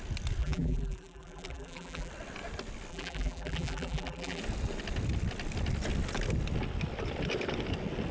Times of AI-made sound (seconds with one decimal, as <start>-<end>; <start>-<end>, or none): 0.4-2.1; 2.9-4.4